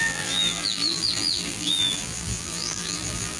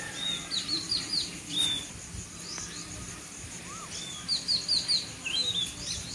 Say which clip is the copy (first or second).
first